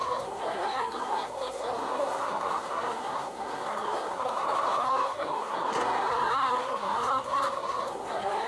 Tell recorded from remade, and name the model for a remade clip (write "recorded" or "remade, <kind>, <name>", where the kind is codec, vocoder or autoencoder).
remade, codec, SNAC